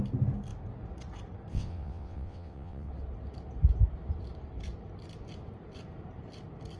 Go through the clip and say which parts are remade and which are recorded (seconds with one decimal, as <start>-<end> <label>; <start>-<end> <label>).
0.0-1.5 recorded; 1.5-2.9 remade; 2.9-6.8 recorded